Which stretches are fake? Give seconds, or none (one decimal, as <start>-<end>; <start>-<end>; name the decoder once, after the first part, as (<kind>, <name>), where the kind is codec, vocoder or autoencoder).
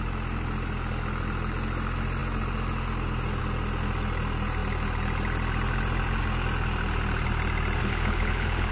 7.8-8.7 (codec, HILCodec)